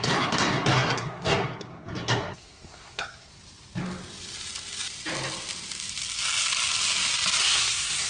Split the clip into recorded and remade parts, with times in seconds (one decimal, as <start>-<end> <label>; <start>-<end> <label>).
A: 0.0-3.3 remade; 3.3-7.4 recorded; 7.4-8.1 remade